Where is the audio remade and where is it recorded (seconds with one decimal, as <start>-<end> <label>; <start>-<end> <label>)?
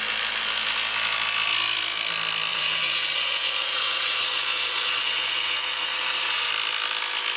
0.0-2.5 recorded; 2.5-6.5 remade; 6.5-7.4 recorded